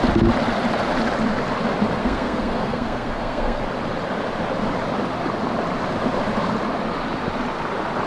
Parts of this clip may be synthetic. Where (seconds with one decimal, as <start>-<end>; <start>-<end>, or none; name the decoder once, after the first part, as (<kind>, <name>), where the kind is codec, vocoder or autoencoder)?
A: 2.0-3.6 (codec, SNAC)